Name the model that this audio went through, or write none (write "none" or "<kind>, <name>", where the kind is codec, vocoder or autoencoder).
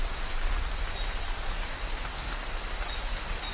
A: none